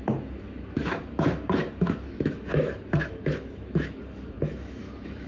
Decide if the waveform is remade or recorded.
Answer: remade